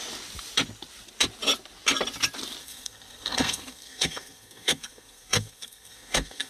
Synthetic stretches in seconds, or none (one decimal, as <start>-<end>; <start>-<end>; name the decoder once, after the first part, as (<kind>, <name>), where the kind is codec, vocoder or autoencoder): 2.6-6.5 (codec, SNAC)